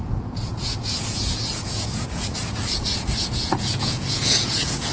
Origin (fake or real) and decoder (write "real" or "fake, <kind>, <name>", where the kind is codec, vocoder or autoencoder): fake, vocoder, Vocos